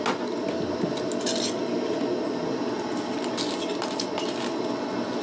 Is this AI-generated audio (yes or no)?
no